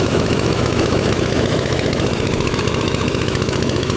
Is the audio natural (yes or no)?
no